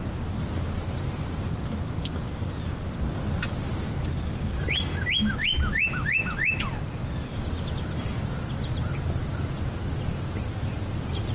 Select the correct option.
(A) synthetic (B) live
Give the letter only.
B